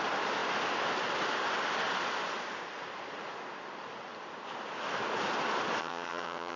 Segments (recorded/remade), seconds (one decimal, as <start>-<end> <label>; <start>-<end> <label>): 0.0-5.8 recorded; 5.8-6.6 remade

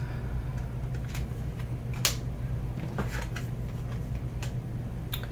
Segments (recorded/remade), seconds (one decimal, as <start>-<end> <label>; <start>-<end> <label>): 0.0-5.3 recorded

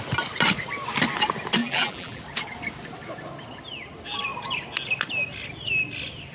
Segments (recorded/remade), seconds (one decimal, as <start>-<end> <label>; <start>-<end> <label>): 0.0-1.6 recorded; 1.6-2.2 remade; 2.2-6.3 recorded

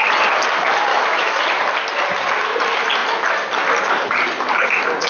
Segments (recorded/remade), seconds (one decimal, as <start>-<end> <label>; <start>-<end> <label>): 0.0-0.9 recorded; 0.9-1.4 remade; 1.4-5.1 recorded

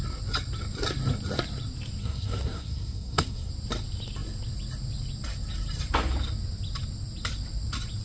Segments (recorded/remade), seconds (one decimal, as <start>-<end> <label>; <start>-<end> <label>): 0.0-2.0 recorded; 2.0-3.5 remade; 3.5-8.0 recorded